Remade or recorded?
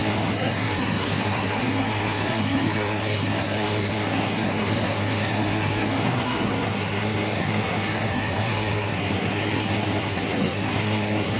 remade